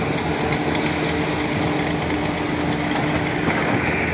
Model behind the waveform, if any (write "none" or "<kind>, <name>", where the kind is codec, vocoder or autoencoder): none